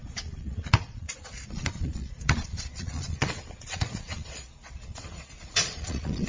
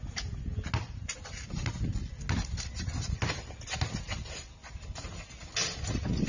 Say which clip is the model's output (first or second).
first